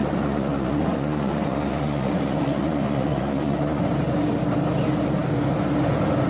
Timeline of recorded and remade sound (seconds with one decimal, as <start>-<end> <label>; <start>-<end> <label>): 0.0-3.8 remade; 3.8-6.3 recorded